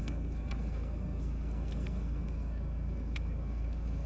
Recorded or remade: remade